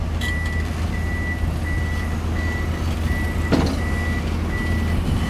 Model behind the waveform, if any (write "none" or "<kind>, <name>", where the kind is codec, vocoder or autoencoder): none